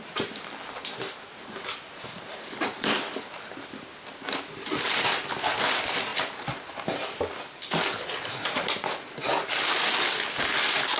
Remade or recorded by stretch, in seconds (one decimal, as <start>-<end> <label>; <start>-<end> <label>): 0.0-11.0 recorded